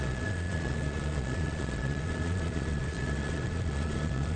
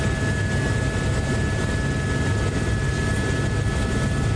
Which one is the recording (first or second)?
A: second